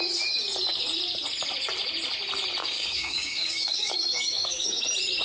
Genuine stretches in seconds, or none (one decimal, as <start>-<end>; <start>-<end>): 0.0-2.6; 4.8-5.2